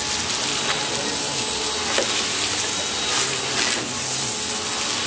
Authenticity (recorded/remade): recorded